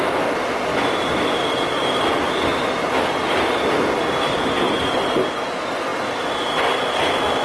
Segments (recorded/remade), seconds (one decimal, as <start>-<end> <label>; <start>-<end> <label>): 0.0-0.7 recorded; 0.7-1.8 remade; 1.8-2.5 recorded; 2.5-3.9 remade; 3.9-7.4 recorded

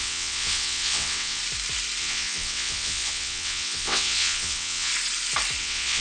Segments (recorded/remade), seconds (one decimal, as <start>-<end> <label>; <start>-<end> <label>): 0.0-1.4 remade; 1.4-2.0 recorded; 2.0-4.9 remade; 4.9-5.6 recorded; 5.6-6.0 remade

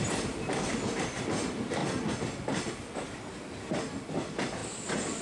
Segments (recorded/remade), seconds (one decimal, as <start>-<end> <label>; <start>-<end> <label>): 0.0-1.8 remade; 1.8-3.8 recorded; 3.8-4.6 remade; 4.6-5.2 recorded

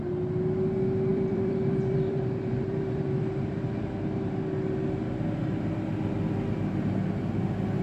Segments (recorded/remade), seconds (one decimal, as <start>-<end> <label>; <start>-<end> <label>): 0.0-1.1 recorded; 1.1-3.7 remade; 3.7-5.4 recorded; 5.4-5.9 remade; 5.9-7.8 recorded

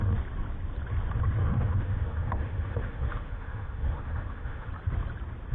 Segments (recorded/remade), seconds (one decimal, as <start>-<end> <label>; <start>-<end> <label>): 0.0-1.4 recorded; 1.4-4.7 remade; 4.7-5.5 recorded